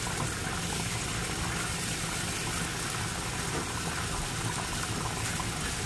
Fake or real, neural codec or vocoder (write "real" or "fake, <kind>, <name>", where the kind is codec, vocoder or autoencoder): real